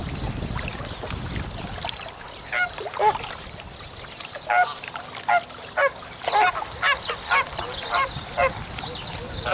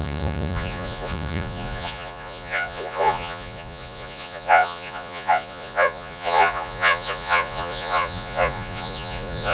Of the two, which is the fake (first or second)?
second